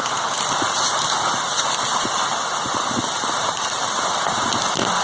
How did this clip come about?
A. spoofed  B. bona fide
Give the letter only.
B